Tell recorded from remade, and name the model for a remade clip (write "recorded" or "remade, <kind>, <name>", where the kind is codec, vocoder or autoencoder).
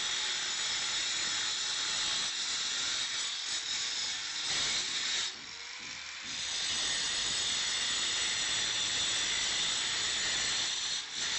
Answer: recorded